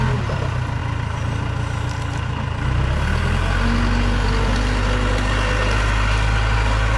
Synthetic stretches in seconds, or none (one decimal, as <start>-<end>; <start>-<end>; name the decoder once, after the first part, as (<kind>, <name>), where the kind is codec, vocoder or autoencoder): none

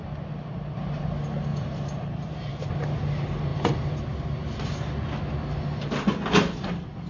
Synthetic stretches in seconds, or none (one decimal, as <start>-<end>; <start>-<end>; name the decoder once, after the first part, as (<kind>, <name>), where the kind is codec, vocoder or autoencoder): 1.5-2.7 (vocoder, BigVGAN v2)